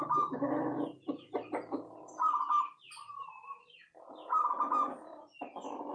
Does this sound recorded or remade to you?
recorded